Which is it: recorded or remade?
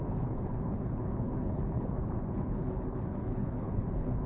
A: remade